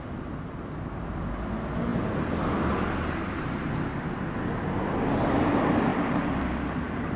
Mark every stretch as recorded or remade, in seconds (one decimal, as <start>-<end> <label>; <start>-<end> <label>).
0.0-7.2 recorded